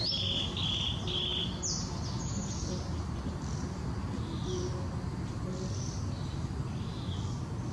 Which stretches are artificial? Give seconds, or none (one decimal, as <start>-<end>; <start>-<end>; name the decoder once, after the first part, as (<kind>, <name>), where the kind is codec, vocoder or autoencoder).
none